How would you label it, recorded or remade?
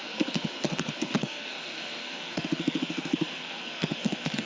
remade